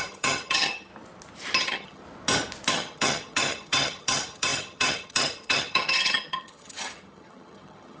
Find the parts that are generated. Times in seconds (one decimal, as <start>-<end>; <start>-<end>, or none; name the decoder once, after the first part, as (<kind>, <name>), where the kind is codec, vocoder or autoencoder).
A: 0.0-0.9 (vocoder, HiFi-GAN); 1.6-2.0; 2.7-8.0